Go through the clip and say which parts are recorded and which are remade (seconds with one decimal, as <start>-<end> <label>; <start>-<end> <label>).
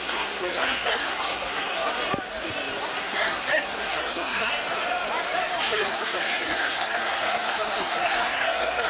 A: 0.0-1.9 remade; 1.9-3.0 recorded; 3.0-4.5 remade; 4.5-5.6 recorded; 5.6-8.9 remade